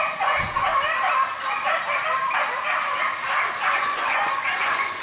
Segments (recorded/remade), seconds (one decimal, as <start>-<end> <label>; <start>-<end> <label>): 0.0-0.7 remade; 0.7-3.7 recorded; 3.7-5.0 remade